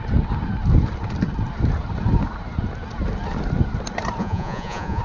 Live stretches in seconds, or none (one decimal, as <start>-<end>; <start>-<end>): 0.0-4.2